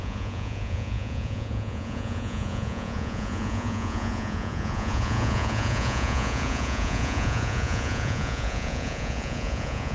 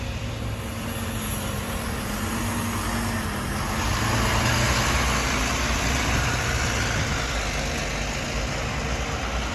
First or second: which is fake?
first